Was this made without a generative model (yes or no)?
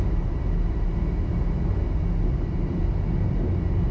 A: yes